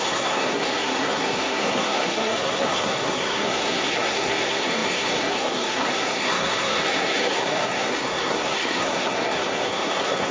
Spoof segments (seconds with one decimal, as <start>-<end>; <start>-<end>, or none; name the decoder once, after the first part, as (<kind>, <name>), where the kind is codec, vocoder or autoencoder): 0.0-10.3 (codec, SNAC)